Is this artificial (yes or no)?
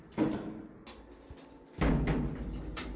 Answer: no